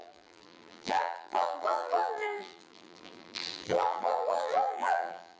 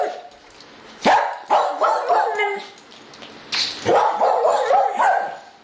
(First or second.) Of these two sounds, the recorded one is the second